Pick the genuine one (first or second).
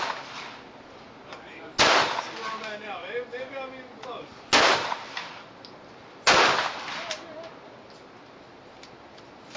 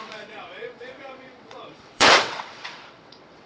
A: first